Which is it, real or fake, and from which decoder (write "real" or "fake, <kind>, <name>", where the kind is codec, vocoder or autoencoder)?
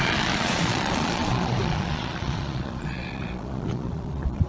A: fake, vocoder, Vocos